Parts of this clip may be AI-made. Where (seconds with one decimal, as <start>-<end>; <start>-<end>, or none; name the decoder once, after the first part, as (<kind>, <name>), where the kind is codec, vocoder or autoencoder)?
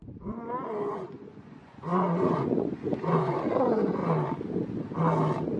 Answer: 0.9-4.0 (vocoder, Vocos)